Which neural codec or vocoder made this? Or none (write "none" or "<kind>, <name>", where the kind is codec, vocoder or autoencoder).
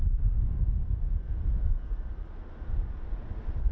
none